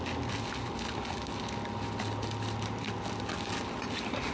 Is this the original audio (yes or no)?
yes